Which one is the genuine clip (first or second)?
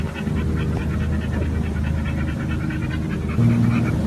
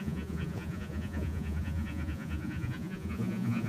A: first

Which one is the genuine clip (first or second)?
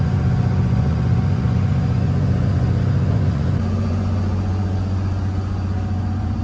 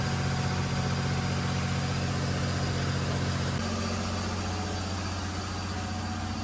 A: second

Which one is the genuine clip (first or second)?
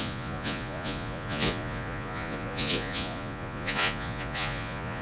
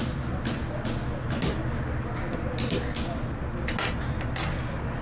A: second